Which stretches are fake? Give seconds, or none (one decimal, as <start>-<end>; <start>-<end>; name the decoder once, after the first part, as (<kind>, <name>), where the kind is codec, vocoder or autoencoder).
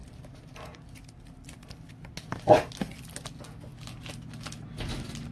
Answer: none